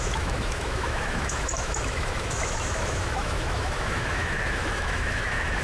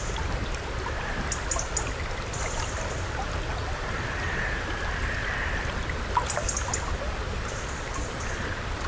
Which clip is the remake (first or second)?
first